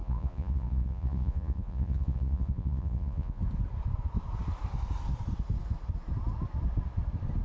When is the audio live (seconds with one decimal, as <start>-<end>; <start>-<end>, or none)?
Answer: 3.4-7.4